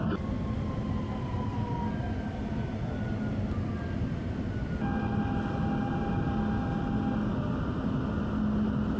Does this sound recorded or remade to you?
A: recorded